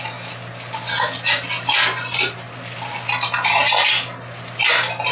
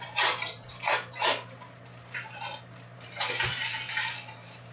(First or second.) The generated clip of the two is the second